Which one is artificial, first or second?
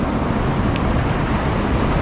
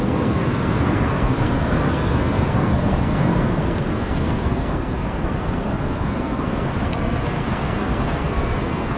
second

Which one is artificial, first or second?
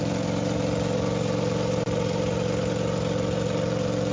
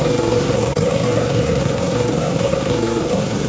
second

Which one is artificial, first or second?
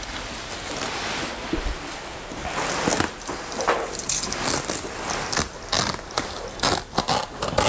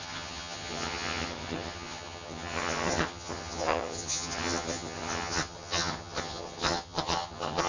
second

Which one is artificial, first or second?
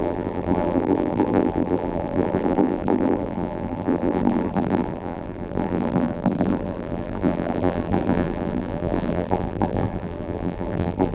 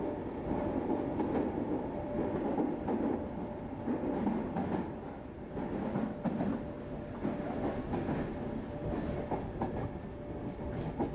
first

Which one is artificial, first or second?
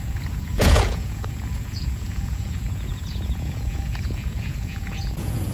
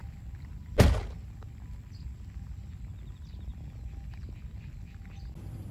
first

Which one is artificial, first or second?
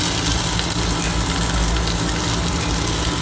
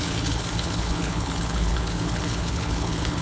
second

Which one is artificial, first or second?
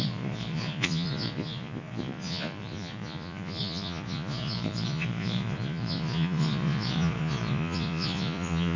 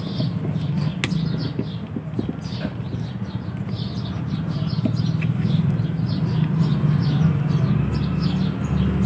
first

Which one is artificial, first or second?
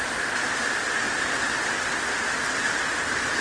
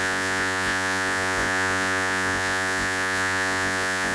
second